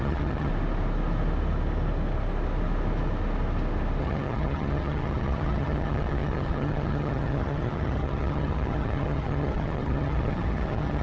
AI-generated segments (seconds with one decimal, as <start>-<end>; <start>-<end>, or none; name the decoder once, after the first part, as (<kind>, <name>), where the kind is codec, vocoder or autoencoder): 0.0-0.5 (vocoder, HiFi-GAN); 4.0-11.0